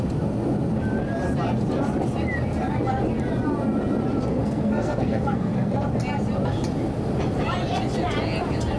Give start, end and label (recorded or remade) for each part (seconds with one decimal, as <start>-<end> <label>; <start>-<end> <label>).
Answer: 0.0-4.3 recorded; 4.3-5.7 remade; 5.7-8.8 recorded